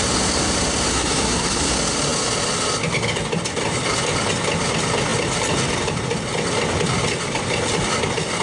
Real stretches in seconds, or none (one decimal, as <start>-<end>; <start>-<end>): 0.0-0.9; 1.7-8.4